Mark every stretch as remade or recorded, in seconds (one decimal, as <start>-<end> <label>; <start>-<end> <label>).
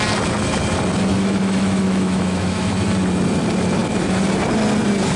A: 0.0-1.1 recorded; 1.1-2.7 remade; 2.7-5.2 recorded